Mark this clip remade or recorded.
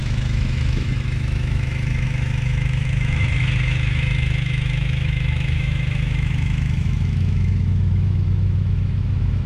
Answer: remade